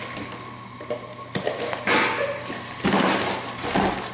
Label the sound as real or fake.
real